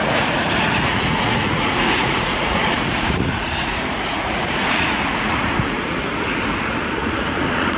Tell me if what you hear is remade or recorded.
remade